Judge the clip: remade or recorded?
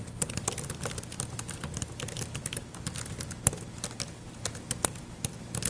recorded